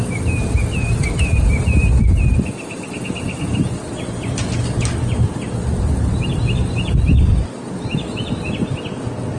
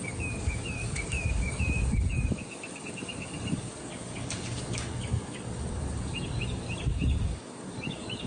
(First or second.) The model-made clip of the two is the second